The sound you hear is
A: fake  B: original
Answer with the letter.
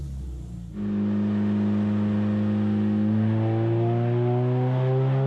B